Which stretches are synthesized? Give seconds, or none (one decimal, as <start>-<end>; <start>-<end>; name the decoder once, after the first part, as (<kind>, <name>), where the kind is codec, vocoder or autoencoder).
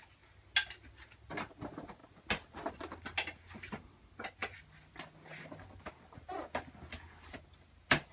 none